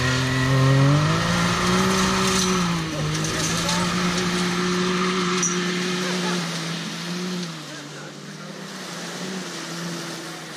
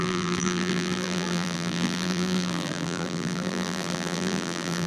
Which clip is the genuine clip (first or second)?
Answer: first